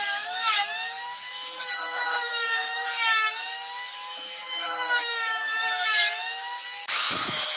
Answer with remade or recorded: remade